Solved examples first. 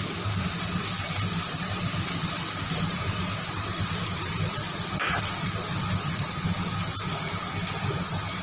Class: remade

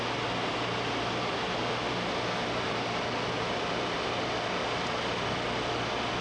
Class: recorded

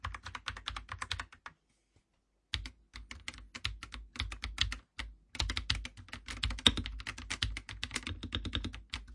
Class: recorded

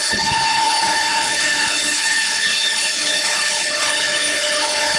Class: remade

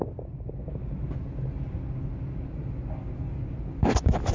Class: recorded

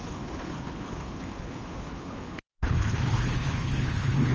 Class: remade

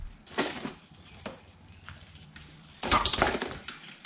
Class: remade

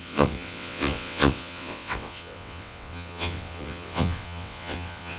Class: remade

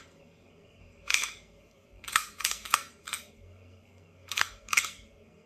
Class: remade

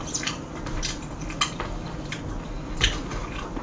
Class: recorded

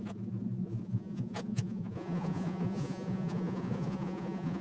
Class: remade